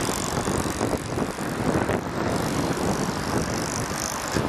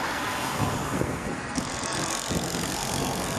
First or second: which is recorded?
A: first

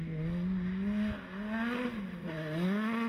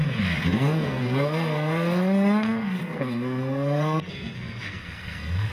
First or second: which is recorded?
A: first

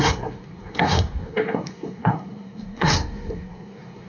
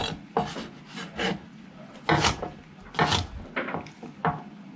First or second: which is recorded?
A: second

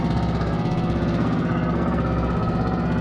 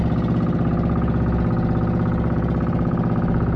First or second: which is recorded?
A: second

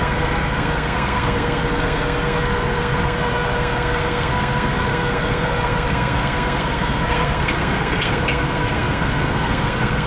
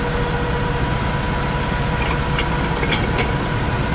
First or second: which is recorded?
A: second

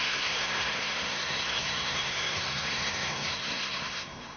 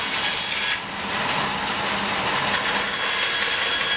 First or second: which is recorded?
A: second